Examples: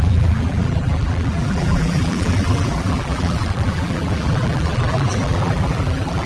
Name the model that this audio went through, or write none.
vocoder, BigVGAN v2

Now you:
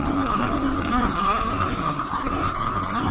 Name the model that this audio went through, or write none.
codec, SNAC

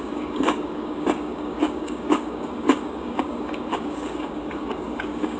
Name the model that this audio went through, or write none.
codec, DAC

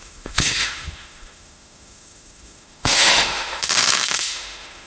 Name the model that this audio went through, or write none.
autoencoder, DAC-VAE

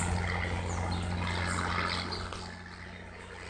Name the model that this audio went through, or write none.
none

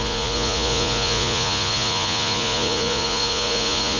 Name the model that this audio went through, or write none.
vocoder, Vocos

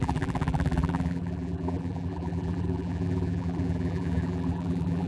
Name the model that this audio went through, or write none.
vocoder, BigVGAN v2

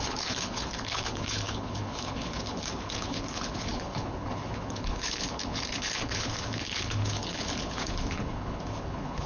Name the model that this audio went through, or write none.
codec, HILCodec